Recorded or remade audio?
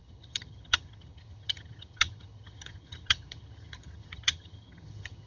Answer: remade